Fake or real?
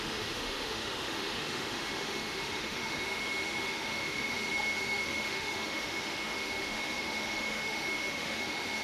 fake